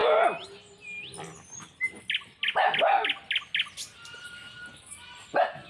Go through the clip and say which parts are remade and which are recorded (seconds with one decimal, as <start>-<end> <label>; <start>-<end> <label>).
0.0-5.7 recorded